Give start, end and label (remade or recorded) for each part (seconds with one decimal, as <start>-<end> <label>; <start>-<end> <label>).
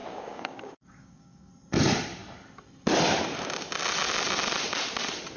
0.0-1.5 remade; 1.5-5.4 recorded